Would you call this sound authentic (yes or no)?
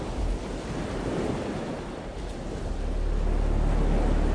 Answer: yes